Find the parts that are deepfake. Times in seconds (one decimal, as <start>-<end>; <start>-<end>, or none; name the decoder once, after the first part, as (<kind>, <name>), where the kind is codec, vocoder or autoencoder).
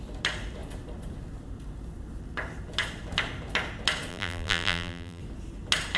4.1-5.2 (vocoder, BigVGAN v2)